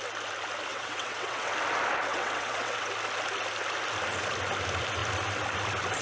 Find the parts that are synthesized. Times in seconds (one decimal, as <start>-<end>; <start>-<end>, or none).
0.7-1.5; 2.1-2.9